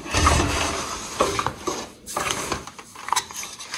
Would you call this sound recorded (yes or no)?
no